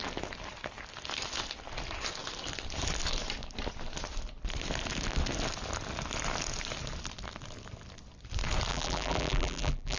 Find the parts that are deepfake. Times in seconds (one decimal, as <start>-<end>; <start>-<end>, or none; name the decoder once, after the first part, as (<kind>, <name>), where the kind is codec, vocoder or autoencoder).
8.7-10.0 (vocoder, BigVGAN v2)